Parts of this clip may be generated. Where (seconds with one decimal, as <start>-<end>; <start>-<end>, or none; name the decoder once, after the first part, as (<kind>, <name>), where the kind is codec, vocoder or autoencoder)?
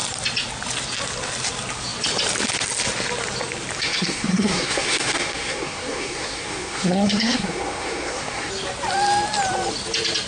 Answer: 3.8-8.5 (codec, SNAC)